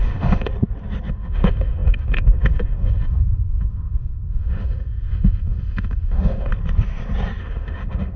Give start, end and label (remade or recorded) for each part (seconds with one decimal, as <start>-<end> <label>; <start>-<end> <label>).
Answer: 0.0-0.5 remade; 0.5-1.1 recorded; 1.1-6.5 remade; 6.5-7.4 recorded; 7.4-8.2 remade